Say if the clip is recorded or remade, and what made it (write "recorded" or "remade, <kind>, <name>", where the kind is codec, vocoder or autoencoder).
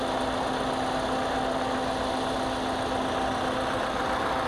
recorded